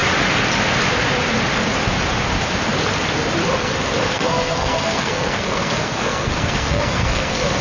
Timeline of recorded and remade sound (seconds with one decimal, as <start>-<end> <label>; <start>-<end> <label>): 0.0-3.6 recorded; 3.6-7.6 remade